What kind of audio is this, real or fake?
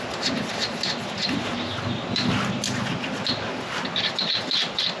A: real